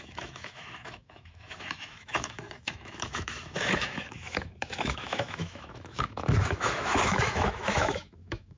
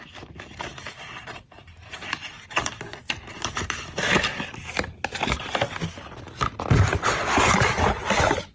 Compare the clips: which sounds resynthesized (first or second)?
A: first